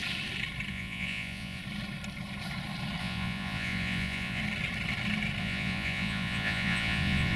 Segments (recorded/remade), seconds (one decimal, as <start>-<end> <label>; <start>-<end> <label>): 0.0-0.7 recorded; 0.7-1.6 remade; 1.6-3.0 recorded; 3.0-4.4 remade; 4.4-5.4 recorded; 5.4-7.4 remade